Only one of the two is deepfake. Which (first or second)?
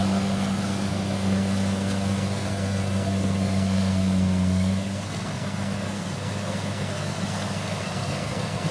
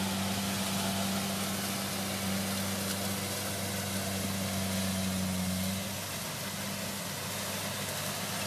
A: first